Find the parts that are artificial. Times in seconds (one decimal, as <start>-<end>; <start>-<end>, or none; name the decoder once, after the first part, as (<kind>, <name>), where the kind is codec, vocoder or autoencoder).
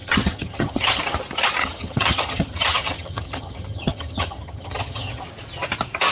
0.0-1.0 (vocoder, HiFi-GAN); 1.6-5.2